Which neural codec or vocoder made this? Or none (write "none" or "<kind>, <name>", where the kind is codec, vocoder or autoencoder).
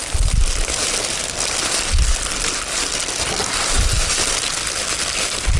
none